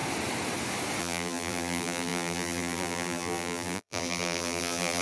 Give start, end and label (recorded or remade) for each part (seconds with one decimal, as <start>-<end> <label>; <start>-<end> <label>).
0.0-1.0 recorded; 1.0-5.0 remade